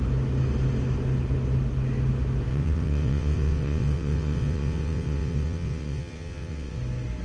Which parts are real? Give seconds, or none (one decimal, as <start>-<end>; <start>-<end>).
0.0-2.5; 6.8-7.2